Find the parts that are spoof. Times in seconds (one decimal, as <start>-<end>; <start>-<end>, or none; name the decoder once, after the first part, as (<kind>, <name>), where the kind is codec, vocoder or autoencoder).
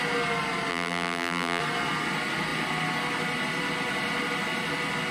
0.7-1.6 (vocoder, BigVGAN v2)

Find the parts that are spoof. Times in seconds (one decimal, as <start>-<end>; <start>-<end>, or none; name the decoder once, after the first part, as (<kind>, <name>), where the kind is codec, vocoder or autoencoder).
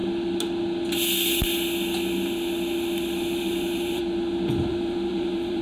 3.4-4.0 (vocoder, BigVGAN v2); 4.7-5.6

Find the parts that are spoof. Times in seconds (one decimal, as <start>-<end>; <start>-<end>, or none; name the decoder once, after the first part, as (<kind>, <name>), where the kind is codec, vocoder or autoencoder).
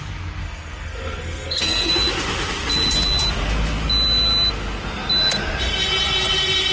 0.4-1.9 (codec, SNAC)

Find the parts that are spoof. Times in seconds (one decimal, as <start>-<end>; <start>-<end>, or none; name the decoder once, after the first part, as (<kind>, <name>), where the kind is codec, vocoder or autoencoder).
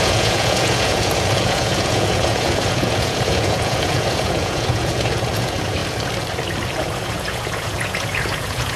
0.0-5.8 (vocoder, Vocos); 6.7-8.8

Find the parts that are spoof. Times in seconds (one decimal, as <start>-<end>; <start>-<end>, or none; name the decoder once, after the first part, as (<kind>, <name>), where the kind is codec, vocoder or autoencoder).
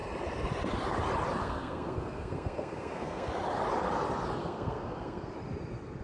1.4-3.3 (codec, SNAC); 4.4-5.3